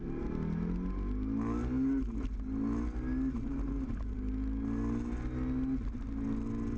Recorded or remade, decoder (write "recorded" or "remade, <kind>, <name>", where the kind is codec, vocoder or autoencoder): recorded